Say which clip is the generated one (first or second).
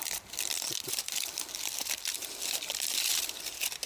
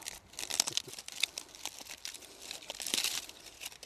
first